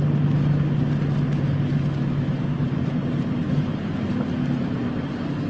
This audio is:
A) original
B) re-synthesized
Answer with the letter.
A